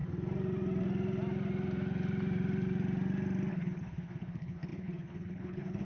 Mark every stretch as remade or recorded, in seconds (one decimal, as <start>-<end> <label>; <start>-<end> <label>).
0.0-3.5 recorded; 3.5-5.8 remade